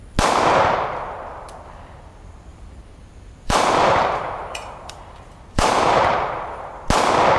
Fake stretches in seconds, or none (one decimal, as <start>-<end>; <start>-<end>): 2.5-6.7